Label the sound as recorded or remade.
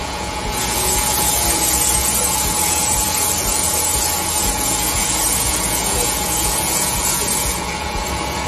remade